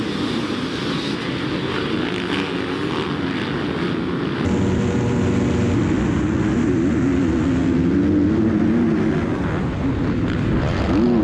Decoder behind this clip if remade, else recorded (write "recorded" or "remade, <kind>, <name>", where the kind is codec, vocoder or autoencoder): recorded